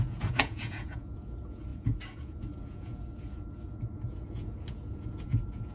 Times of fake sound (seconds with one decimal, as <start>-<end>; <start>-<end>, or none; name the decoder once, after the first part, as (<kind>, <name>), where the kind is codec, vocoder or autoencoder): 0.0-5.7 (vocoder, Vocos)